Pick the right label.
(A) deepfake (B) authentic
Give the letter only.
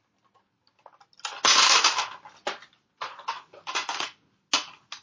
B